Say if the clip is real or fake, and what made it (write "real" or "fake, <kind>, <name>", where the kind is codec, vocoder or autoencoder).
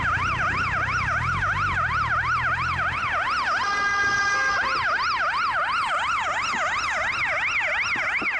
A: real